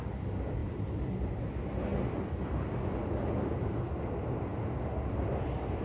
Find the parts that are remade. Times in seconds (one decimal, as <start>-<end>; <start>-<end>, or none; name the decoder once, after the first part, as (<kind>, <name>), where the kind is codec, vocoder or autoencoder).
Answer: none